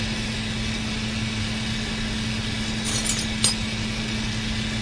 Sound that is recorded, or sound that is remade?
recorded